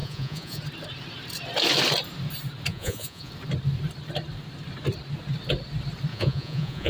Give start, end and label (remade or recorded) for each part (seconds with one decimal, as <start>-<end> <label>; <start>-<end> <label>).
0.0-0.6 remade; 0.6-2.7 recorded; 2.7-3.3 remade; 3.3-6.1 recorded; 6.1-6.9 remade